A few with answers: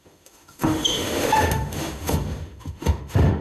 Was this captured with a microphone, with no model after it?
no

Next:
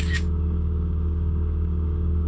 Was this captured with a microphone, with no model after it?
no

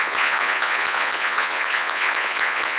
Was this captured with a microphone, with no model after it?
no